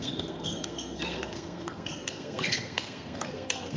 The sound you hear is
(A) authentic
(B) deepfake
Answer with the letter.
B